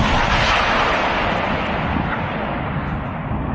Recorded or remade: recorded